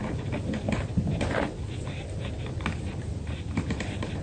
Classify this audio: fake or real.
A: real